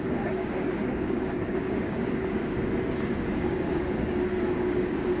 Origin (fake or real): fake